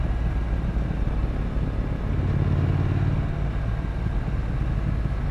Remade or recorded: recorded